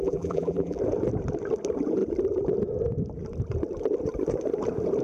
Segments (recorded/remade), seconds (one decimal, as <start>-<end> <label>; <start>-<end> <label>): 0.0-0.8 remade; 0.8-5.0 recorded